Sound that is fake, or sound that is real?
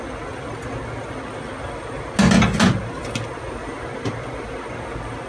real